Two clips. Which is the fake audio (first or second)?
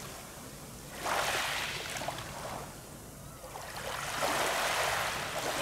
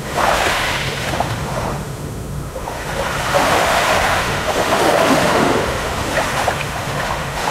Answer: second